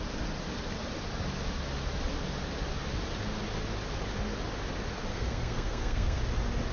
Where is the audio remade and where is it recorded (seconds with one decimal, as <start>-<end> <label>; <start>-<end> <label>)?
0.0-5.1 recorded; 5.1-6.2 remade; 6.2-6.7 recorded